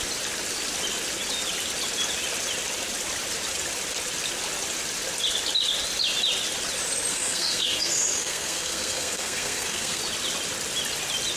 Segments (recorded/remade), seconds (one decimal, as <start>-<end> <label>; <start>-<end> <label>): 0.0-7.1 recorded; 7.1-10.0 remade; 10.0-11.4 recorded